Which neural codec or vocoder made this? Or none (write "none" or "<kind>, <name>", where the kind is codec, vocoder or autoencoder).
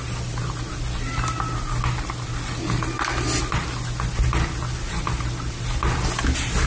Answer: none